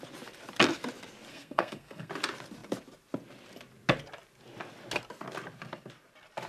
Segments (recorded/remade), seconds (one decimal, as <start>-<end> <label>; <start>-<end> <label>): 0.0-1.3 recorded; 1.3-2.1 remade; 2.1-6.5 recorded